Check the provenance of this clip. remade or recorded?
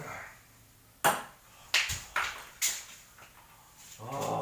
recorded